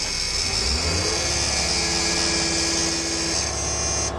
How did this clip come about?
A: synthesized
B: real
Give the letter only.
B